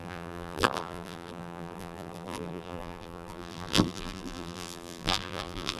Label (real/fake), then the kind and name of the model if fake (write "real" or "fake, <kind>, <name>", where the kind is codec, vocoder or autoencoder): fake, vocoder, BigVGAN v2